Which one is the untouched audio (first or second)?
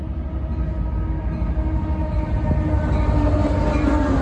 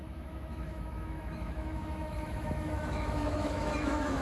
first